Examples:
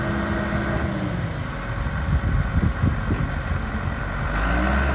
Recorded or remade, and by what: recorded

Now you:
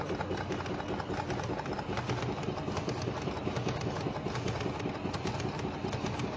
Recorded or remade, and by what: recorded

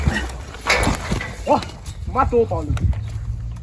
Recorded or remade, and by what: recorded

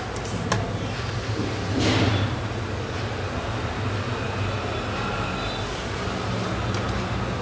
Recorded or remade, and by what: recorded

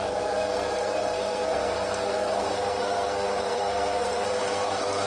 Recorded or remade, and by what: remade, codec, SNAC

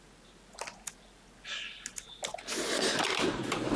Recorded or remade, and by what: recorded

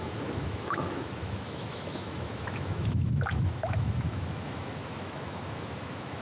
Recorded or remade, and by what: remade, autoencoder, DAC-VAE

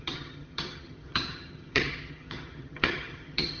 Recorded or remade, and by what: remade, vocoder, HiFi-GAN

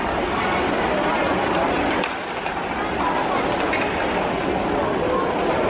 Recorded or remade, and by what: recorded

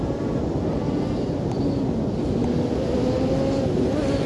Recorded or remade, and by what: recorded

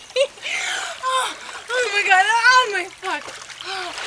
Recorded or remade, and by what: recorded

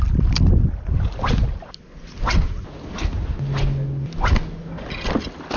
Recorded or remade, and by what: recorded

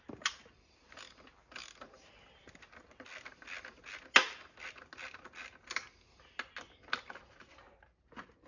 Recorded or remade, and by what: recorded